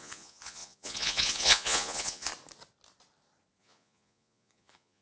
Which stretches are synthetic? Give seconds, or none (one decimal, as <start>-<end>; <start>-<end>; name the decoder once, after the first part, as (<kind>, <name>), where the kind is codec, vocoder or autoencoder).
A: 0.0-2.3 (vocoder, Vocos); 3.6-5.0